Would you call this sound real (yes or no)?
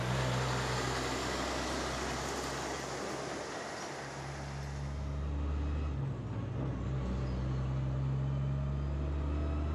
yes